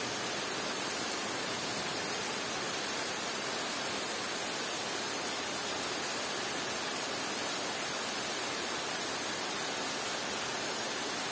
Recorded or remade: recorded